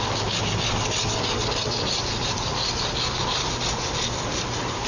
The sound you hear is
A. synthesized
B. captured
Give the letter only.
B